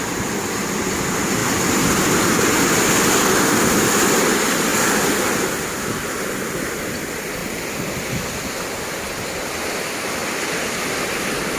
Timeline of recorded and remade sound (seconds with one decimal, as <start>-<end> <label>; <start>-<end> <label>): 0.0-11.6 recorded